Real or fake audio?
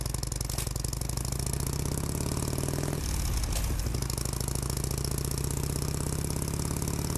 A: real